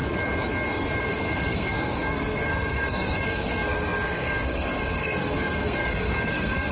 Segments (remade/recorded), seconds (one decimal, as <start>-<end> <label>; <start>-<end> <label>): 0.0-1.0 recorded; 1.0-6.7 remade